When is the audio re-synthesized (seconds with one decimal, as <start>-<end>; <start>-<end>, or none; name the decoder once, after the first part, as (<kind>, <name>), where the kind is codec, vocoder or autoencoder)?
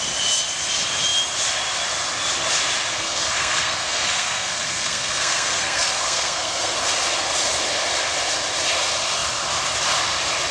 2.9-6.8 (codec, SNAC)